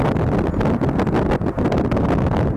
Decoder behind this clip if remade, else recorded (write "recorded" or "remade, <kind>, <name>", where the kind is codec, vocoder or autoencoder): recorded